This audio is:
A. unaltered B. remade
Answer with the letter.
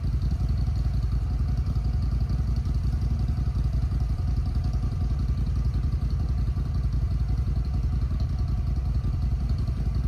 B